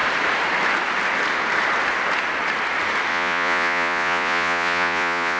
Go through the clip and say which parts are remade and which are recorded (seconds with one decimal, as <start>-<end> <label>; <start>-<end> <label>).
0.0-3.1 recorded; 3.1-5.4 remade